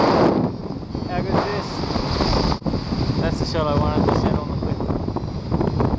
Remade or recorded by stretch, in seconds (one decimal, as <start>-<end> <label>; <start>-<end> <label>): 0.0-6.0 recorded

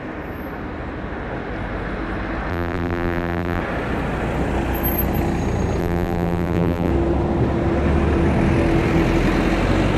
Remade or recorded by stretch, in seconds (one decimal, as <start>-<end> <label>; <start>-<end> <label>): 0.0-2.5 recorded; 2.5-3.6 remade; 3.6-5.8 recorded; 5.8-6.9 remade; 6.9-10.0 recorded